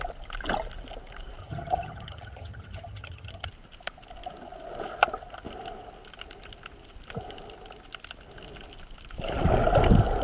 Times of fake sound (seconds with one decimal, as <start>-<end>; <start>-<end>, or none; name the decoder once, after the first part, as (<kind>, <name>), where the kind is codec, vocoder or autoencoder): 1.4-3.5 (vocoder, HiFi-GAN)